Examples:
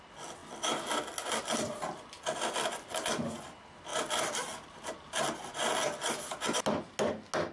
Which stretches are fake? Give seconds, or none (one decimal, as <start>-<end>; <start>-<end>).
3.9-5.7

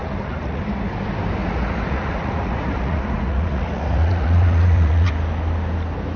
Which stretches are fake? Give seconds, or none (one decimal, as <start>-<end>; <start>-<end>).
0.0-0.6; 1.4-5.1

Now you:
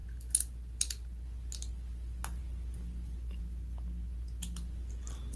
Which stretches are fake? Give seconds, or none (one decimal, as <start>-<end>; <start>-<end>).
none

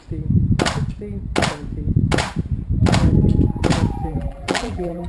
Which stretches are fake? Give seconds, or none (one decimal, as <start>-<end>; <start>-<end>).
4.0-5.1

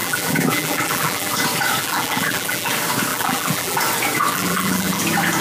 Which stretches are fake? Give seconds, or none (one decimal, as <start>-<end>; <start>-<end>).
0.0-1.3; 1.8-2.7; 3.1-3.8; 4.3-5.0

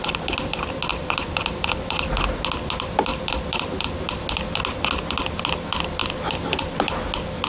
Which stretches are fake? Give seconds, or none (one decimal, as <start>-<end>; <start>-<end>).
0.9-2.1; 3.1-4.0

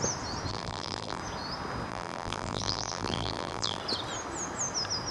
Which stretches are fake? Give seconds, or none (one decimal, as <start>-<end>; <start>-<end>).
0.5-1.2; 1.9-3.8

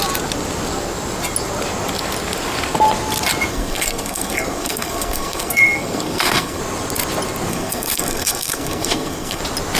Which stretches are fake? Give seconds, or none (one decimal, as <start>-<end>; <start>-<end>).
3.5-6.6; 7.5-9.4